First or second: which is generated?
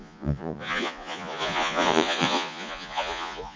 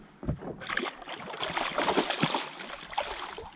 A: first